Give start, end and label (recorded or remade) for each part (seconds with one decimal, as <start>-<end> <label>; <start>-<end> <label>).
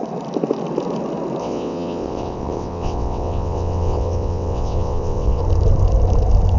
0.0-1.4 recorded; 1.4-5.4 remade; 5.4-6.6 recorded